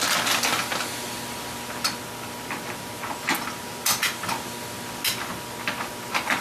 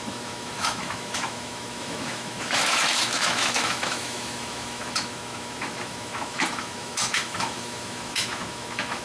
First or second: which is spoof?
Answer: second